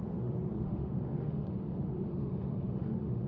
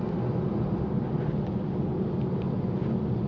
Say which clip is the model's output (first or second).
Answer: first